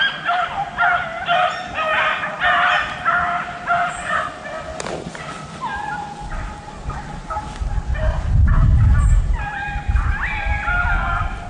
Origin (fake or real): real